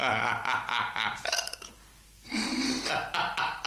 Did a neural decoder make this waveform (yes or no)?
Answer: yes